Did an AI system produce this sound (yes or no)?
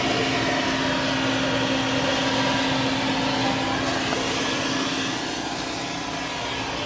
no